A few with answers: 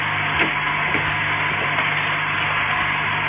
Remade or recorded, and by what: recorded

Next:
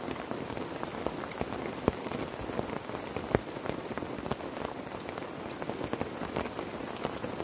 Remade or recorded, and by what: recorded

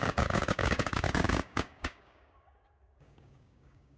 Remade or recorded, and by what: remade, codec, DAC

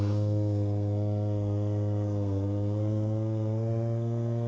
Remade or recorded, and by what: remade, codec, SNAC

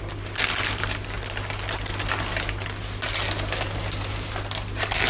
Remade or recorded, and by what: recorded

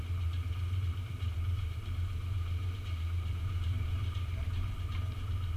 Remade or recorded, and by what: remade, vocoder, BigVGAN v2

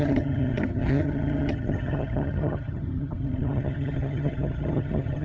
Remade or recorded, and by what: remade, vocoder, HiFi-GAN